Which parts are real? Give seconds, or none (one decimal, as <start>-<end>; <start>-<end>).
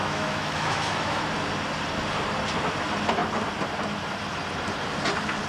1.2-5.5